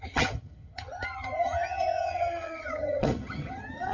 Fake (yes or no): yes